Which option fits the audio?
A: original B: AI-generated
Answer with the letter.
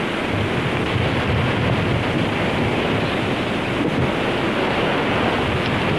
A